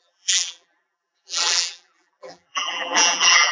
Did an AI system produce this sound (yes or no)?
yes